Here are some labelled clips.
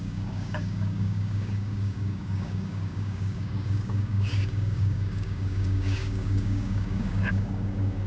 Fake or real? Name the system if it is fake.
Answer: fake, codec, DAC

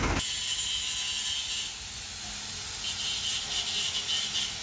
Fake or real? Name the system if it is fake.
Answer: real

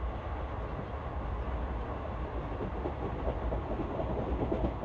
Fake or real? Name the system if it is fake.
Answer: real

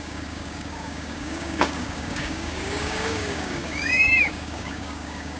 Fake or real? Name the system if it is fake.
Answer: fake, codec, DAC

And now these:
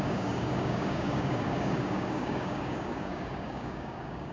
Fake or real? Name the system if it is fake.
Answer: fake, codec, DAC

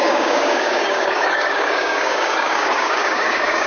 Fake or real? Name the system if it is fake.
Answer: fake, codec, DAC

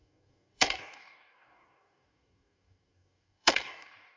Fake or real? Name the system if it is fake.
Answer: fake, codec, DAC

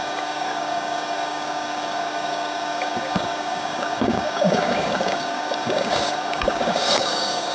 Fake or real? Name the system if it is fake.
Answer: fake, codec, DAC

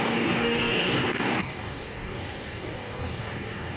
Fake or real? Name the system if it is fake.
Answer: fake, codec, DAC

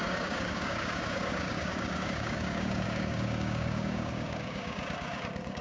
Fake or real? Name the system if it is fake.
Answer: fake, codec, DAC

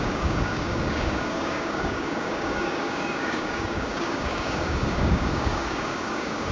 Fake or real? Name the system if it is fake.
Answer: fake, codec, DAC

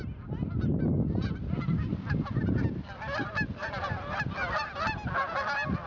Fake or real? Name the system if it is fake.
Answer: real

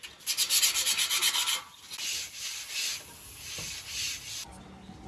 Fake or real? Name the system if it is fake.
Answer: real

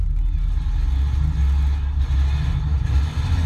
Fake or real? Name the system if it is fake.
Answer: real